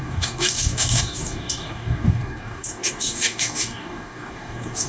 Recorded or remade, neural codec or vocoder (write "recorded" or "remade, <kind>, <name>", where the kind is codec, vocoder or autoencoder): remade, codec, DAC